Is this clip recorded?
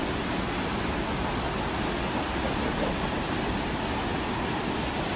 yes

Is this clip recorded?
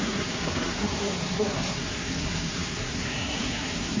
no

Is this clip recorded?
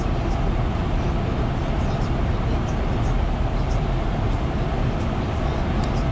yes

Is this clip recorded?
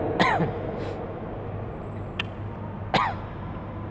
yes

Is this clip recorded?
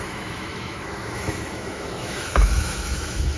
no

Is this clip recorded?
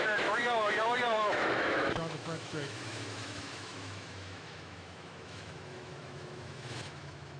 no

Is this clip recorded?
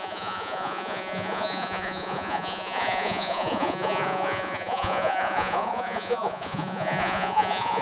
no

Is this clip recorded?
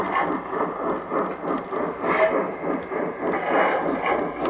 yes